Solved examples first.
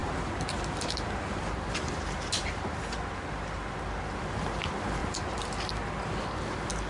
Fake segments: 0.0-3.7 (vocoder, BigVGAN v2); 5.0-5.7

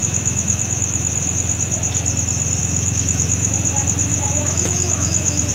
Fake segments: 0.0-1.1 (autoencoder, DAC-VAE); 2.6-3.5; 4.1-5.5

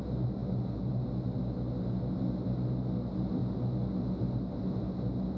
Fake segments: none

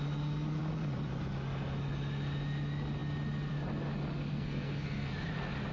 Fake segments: 4.3-5.1 (codec, SNAC)

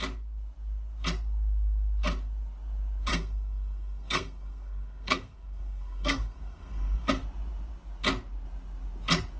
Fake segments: 3.1-7.1 (codec, SNAC)

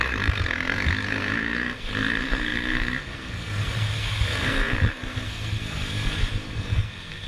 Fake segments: 0.0-7.3 (codec, SNAC)